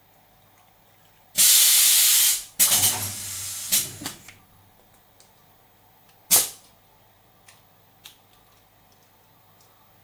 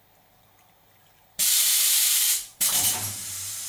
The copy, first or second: second